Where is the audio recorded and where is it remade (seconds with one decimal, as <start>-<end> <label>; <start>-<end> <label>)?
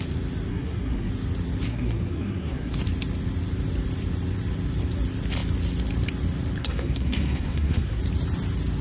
0.0-0.5 recorded; 0.5-1.1 remade; 1.1-1.7 recorded; 1.7-2.7 remade; 2.7-6.6 recorded; 6.6-8.0 remade; 8.0-8.8 recorded